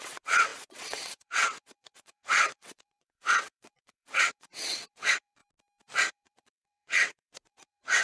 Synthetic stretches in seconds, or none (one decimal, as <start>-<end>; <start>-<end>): 0.0-5.4; 6.0-8.0